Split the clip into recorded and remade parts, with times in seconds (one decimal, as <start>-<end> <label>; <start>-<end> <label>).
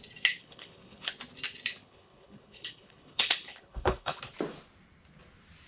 0.0-0.4 recorded; 0.4-1.1 remade; 1.1-1.8 recorded; 1.8-4.2 remade; 4.2-5.7 recorded